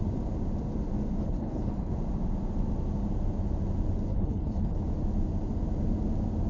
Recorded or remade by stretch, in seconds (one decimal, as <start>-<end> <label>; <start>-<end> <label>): 0.0-1.2 recorded; 1.2-1.9 remade; 1.9-4.1 recorded; 4.1-4.8 remade; 4.8-6.5 recorded